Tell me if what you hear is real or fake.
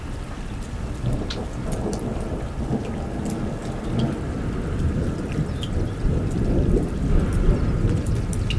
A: real